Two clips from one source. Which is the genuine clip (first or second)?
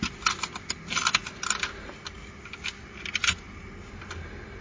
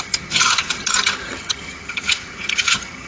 first